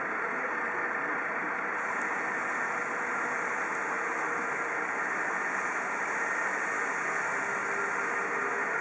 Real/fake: real